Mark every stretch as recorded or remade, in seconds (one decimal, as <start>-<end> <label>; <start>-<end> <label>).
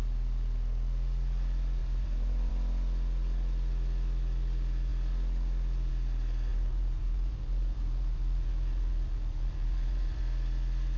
0.0-1.8 recorded; 1.8-2.5 remade; 2.5-6.5 recorded; 6.5-10.2 remade; 10.2-11.0 recorded